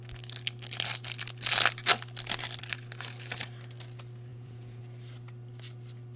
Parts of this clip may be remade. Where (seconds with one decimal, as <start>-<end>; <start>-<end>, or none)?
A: 4.3-4.8

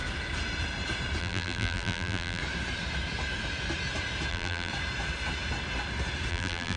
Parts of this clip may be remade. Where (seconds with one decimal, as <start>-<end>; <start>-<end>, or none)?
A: 1.2-2.4; 4.3-4.7; 6.3-6.8